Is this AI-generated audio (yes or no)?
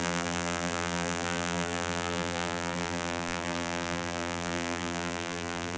yes